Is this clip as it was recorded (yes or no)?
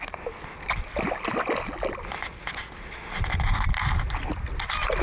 yes